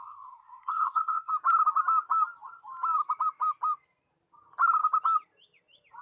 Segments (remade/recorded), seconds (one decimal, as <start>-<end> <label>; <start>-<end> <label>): 0.0-1.3 remade; 1.3-6.0 recorded